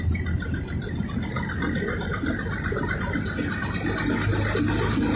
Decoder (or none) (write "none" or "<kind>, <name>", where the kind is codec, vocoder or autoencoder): none